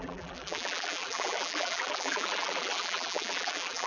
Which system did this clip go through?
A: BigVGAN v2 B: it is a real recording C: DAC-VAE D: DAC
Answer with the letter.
A